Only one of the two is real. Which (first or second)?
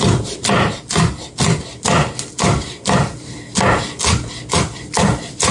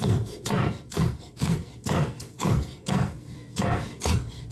first